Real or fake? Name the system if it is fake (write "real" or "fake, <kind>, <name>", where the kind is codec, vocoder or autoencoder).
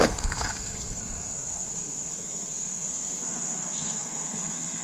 fake, codec, SNAC